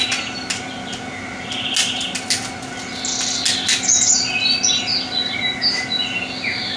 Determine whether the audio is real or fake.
real